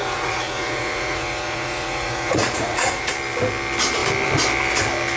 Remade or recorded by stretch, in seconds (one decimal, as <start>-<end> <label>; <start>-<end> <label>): 0.0-3.1 remade; 3.1-5.2 recorded